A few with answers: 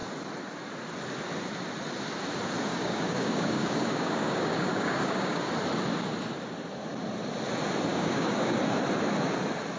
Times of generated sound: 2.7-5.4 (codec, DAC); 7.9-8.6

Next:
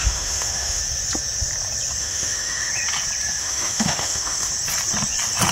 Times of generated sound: 0.0-0.8 (autoencoder, DAC-VAE); 2.0-2.7; 3.4-4.5

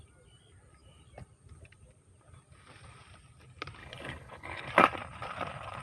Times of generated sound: 3.8-4.7 (codec, HILCodec)

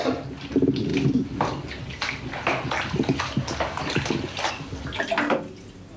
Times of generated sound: none

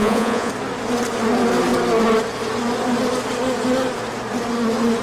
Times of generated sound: 0.0-0.5 (vocoder, Vocos)

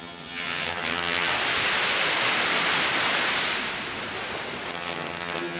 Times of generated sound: 0.0-1.3 (vocoder, HiFi-GAN); 4.7-5.6

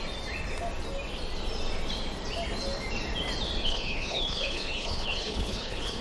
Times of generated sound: 3.6-6.0 (codec, HILCodec)

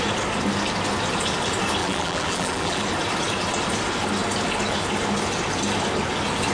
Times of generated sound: 1.8-2.8 (vocoder, BigVGAN v2)